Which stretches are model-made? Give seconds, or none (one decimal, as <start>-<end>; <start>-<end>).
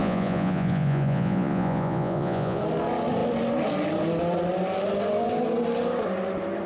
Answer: 0.0-2.6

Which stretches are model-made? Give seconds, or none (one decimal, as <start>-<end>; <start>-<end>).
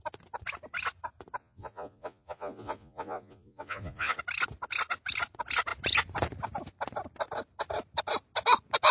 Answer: 1.4-4.2